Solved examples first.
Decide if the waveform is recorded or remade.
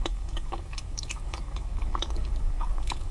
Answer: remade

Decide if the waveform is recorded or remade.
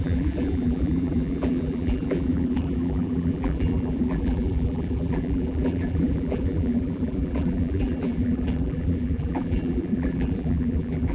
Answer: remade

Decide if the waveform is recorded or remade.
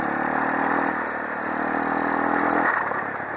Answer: recorded